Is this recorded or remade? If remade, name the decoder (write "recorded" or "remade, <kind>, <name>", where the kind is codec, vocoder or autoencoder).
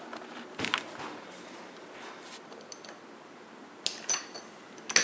recorded